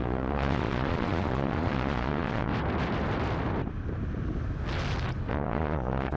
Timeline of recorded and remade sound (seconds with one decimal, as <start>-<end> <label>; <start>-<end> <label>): 0.0-2.5 remade; 2.5-5.3 recorded; 5.3-6.2 remade